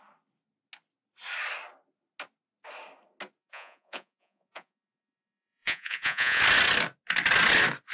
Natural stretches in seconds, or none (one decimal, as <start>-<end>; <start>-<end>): 0.0-3.4; 6.4-7.9